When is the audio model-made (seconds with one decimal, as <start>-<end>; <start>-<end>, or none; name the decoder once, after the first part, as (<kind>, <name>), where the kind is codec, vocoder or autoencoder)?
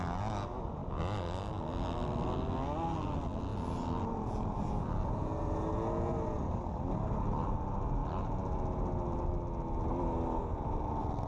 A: none